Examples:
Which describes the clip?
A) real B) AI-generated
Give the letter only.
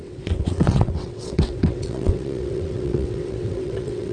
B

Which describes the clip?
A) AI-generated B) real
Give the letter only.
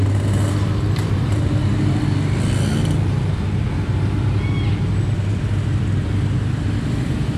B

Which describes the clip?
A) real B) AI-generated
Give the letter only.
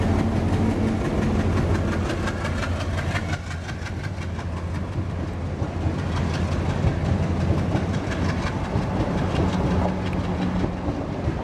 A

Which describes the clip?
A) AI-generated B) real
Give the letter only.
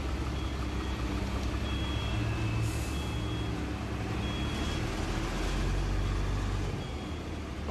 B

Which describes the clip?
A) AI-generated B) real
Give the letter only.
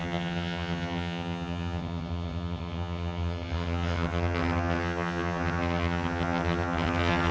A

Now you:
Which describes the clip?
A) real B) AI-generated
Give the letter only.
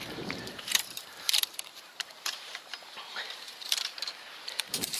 B